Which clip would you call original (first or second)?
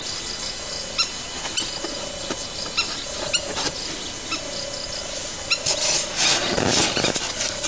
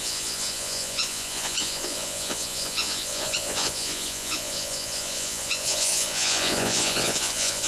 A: first